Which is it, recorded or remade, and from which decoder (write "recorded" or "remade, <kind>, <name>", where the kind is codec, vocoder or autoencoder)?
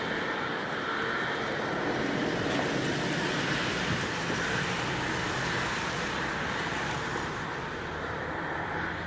recorded